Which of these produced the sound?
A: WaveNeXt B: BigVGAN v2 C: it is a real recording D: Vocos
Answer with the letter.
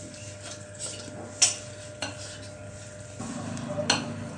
C